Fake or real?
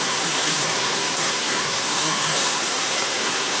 fake